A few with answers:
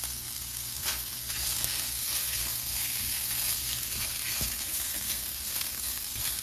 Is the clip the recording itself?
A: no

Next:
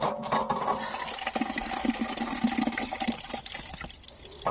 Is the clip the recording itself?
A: yes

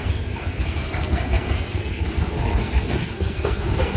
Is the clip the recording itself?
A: no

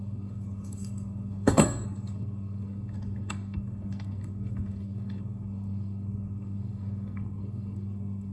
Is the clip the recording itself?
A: no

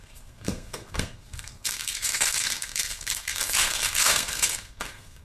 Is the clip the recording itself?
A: no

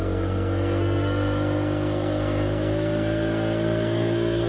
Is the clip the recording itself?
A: no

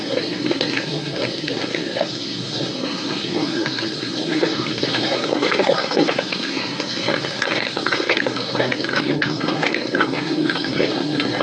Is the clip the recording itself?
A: no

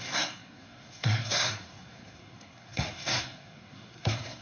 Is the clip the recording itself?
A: no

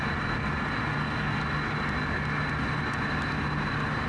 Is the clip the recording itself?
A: yes